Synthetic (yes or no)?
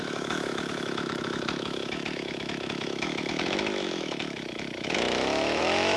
yes